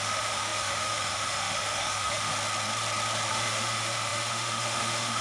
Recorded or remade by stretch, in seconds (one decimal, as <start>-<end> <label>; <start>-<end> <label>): 0.0-2.3 remade; 2.3-3.3 recorded; 3.3-5.2 remade